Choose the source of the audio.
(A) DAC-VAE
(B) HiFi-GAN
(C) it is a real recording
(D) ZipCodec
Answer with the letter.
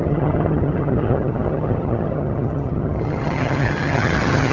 B